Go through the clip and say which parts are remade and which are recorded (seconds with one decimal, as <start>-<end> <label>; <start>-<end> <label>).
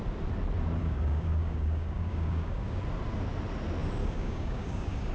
0.0-0.8 recorded; 0.8-2.8 remade; 2.8-4.0 recorded; 4.0-5.1 remade